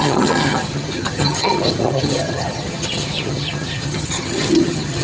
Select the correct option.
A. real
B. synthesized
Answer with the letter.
B